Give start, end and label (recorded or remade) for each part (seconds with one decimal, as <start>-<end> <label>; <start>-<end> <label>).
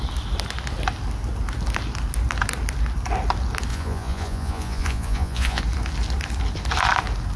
0.0-3.7 recorded; 3.7-5.6 remade; 5.6-7.4 recorded